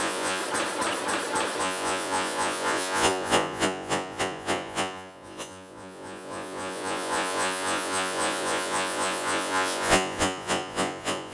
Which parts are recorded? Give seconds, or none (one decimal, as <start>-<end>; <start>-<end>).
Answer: 0.4-1.6